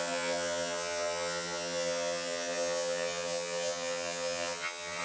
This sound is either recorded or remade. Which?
remade